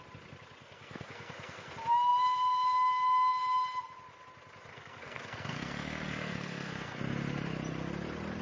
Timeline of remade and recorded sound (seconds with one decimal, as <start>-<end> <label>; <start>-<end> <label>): 0.0-0.6 recorded; 0.6-1.7 remade; 1.7-4.7 recorded; 4.7-7.0 remade; 7.0-8.4 recorded